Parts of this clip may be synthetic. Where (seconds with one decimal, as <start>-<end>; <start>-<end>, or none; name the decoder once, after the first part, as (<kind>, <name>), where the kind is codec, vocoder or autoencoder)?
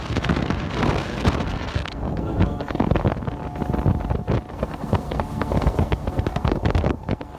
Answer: 0.0-3.4 (codec, SNAC); 4.5-7.4